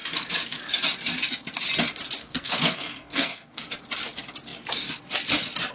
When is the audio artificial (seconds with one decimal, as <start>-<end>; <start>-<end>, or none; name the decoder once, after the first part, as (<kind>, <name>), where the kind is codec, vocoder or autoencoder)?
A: 2.2-3.6 (codec, SNAC)